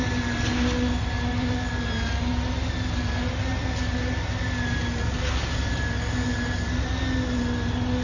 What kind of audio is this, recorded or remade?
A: recorded